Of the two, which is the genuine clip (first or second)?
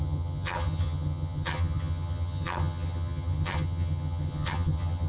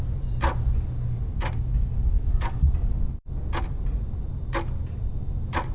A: second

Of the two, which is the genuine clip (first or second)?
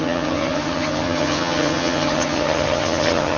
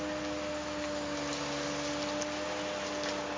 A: second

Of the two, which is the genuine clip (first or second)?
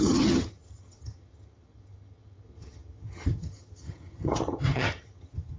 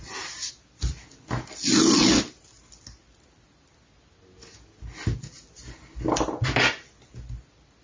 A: second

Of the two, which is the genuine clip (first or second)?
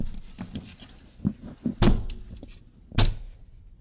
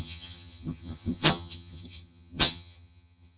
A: first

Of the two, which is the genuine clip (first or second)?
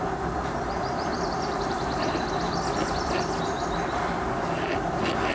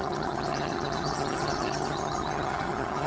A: first